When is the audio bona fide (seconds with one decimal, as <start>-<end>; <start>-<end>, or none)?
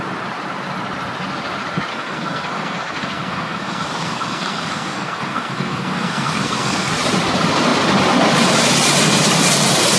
0.0-1.9; 6.9-10.0